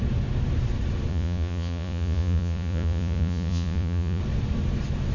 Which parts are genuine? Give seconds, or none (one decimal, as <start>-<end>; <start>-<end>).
0.0-1.1; 4.2-5.1